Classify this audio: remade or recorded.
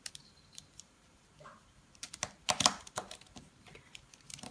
remade